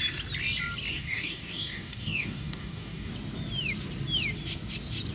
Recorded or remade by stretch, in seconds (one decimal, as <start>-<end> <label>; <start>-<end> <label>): 0.0-0.9 recorded; 0.9-3.1 remade; 3.1-5.1 recorded